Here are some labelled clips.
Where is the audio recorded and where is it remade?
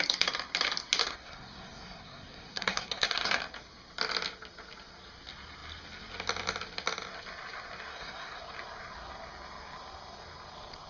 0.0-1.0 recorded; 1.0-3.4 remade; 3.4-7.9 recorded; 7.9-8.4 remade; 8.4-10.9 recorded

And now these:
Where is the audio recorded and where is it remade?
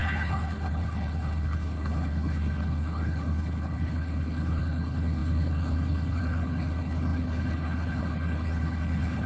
0.0-9.3 remade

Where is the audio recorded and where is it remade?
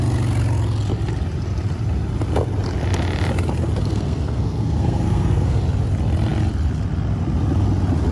0.0-3.9 recorded; 3.9-5.6 remade; 5.6-8.1 recorded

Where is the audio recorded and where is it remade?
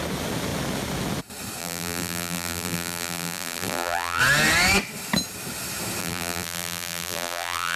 0.0-1.6 recorded; 1.6-4.2 remade; 4.2-6.0 recorded; 6.0-7.8 remade